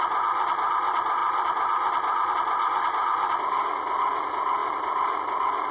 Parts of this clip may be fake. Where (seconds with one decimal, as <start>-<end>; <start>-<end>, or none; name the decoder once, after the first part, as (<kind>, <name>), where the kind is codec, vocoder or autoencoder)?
1.2-2.3 (vocoder, BigVGAN v2); 4.6-5.2